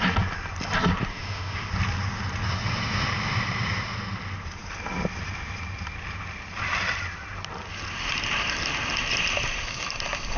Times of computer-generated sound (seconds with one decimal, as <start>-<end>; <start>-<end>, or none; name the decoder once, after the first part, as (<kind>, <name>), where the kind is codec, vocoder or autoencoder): 1.1-1.7 (autoencoder, DAC-VAE)